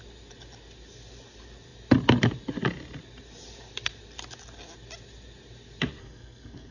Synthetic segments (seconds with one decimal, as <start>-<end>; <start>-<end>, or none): 6.0-6.7